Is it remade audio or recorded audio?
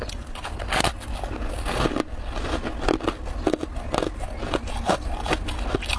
recorded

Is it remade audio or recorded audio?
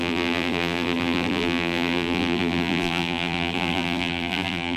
remade